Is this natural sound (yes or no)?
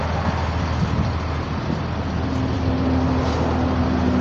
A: yes